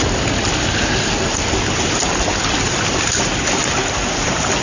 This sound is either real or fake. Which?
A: real